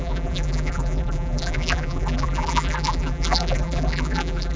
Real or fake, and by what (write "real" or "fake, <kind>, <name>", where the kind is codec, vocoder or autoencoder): fake, vocoder, BigVGAN v2